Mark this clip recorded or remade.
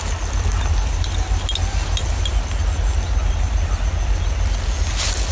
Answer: recorded